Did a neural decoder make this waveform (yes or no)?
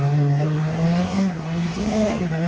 yes